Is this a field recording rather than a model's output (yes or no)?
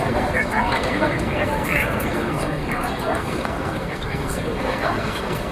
no